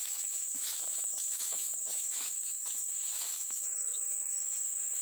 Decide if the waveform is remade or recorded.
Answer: remade